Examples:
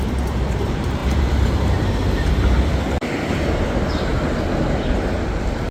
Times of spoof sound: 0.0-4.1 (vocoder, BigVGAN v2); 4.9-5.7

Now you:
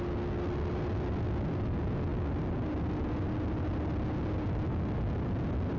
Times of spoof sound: none